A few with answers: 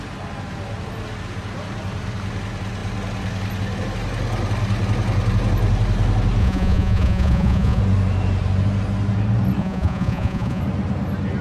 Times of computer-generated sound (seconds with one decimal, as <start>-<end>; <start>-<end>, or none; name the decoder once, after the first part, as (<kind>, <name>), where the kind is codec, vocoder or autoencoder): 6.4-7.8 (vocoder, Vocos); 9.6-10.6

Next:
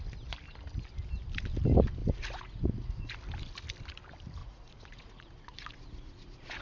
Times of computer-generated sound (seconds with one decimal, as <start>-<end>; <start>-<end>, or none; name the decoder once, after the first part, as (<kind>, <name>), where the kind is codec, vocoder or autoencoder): 2.0-3.1 (vocoder, Vocos); 4.4-6.6

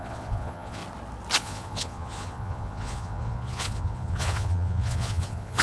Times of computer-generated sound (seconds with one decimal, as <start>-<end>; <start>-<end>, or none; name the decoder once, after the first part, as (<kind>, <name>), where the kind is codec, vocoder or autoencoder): 0.0-0.8 (vocoder, Vocos); 1.4-5.6

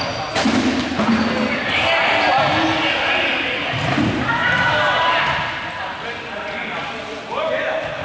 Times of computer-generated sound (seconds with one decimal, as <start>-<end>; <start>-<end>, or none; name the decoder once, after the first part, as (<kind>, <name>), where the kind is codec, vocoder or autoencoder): none